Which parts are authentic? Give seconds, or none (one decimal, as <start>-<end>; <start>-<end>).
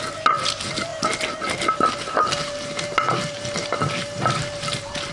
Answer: 0.0-5.1